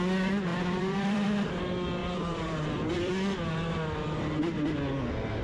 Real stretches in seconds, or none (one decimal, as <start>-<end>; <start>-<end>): 0.0-0.5; 1.6-2.0; 3.1-5.4